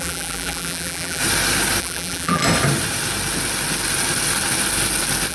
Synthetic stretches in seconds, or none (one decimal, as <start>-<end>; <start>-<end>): 0.0-1.2; 1.8-2.4